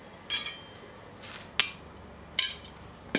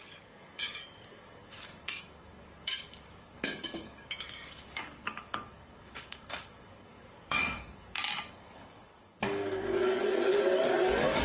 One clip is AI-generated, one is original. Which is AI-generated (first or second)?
second